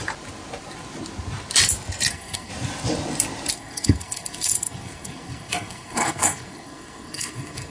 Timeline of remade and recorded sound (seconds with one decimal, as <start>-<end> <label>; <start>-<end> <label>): 0.0-2.1 recorded; 2.1-2.5 remade; 2.5-3.5 recorded; 3.5-7.7 remade